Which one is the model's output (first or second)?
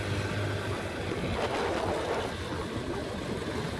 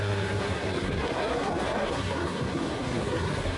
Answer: second